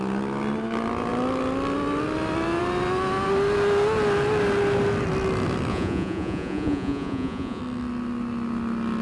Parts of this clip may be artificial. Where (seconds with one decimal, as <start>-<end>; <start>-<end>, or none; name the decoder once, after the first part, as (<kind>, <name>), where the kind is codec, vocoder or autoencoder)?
5.7-7.6 (vocoder, Vocos)